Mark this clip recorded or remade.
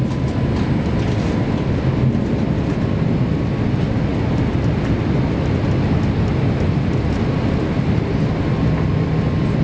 recorded